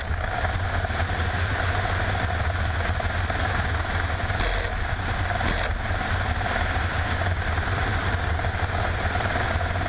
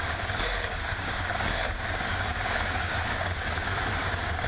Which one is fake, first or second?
second